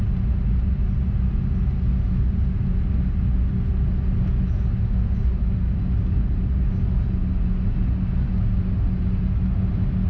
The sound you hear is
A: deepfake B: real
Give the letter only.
B